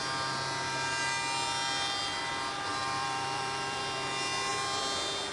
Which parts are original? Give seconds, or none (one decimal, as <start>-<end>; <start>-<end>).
0.0-2.7; 3.8-5.3